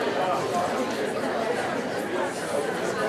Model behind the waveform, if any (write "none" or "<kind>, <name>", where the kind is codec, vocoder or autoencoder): none